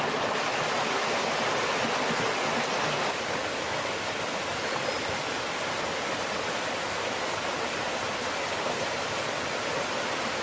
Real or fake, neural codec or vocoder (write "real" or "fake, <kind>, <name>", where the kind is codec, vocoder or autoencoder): real